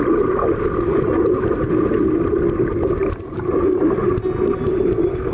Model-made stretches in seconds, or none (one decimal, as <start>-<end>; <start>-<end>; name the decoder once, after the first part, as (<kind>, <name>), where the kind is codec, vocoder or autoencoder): none